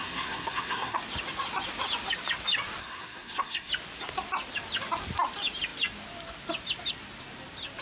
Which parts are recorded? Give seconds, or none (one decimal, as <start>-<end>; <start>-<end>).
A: 1.0-2.8; 3.7-7.8